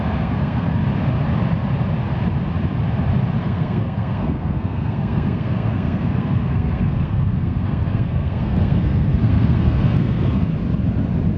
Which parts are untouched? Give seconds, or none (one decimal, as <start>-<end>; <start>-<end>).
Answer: 0.8-3.4; 10.5-11.4